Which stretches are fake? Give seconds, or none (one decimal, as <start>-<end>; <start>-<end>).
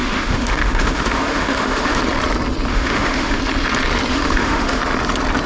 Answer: 0.0-2.0; 2.7-3.4; 4.1-4.8